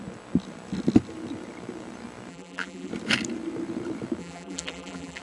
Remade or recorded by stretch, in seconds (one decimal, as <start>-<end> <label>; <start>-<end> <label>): 0.0-2.3 recorded; 2.3-2.9 remade; 2.9-4.2 recorded; 4.2-5.2 remade